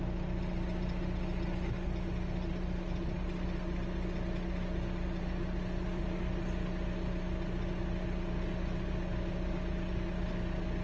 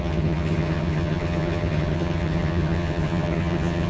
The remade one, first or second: second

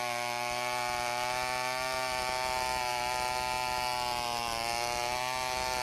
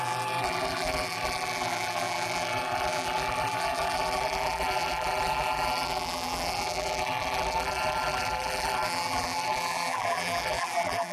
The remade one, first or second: second